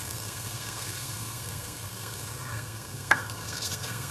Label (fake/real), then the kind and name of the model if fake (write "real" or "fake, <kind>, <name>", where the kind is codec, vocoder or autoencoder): fake, codec, SNAC